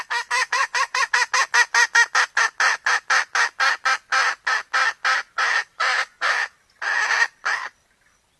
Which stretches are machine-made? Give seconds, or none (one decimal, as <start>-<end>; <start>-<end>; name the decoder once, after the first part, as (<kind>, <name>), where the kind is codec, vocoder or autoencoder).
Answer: 0.4-1.1 (vocoder, Vocos); 5.7-6.3